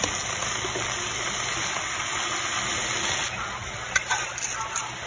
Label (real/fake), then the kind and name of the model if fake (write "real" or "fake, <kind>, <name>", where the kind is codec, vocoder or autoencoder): real